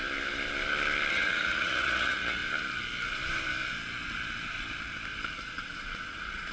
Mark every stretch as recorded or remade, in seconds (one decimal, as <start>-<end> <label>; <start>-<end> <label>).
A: 0.0-1.1 recorded; 1.1-2.4 remade; 2.4-5.3 recorded; 5.3-6.5 remade